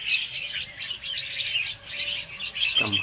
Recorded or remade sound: recorded